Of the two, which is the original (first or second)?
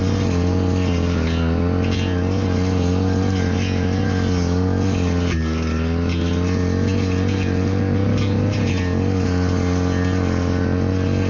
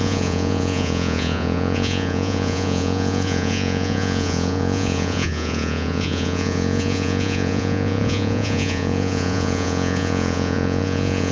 first